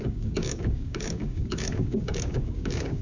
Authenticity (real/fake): fake